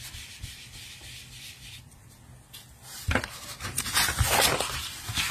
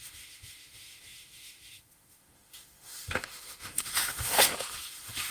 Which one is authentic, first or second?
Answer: first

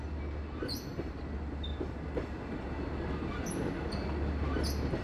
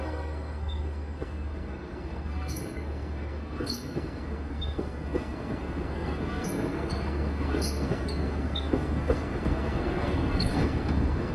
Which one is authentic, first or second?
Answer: first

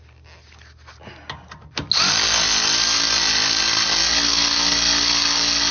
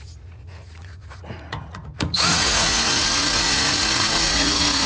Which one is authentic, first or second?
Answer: first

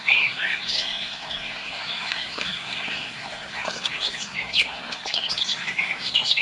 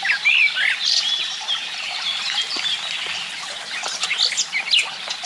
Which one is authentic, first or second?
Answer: second